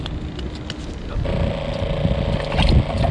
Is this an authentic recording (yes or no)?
yes